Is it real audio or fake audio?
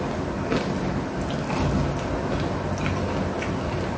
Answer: real